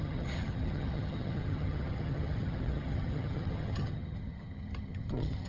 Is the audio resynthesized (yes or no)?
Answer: yes